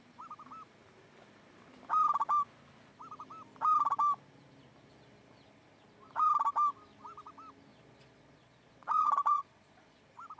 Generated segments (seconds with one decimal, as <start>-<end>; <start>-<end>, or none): 7.7-10.0